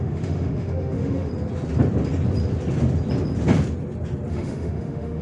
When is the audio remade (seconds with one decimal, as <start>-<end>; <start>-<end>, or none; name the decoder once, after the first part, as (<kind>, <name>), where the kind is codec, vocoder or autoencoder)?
0.0-1.3 (autoencoder, DAC-VAE); 4.3-5.2